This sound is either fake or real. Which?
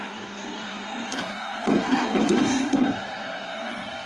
fake